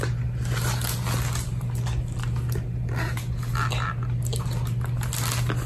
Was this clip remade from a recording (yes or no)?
no